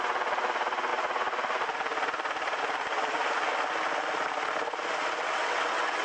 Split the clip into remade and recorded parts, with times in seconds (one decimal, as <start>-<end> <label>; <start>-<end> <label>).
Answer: 0.0-5.2 recorded; 5.2-6.0 remade